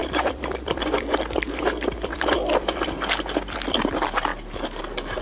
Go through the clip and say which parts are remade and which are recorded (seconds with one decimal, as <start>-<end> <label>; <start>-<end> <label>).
0.0-2.9 remade; 2.9-5.2 recorded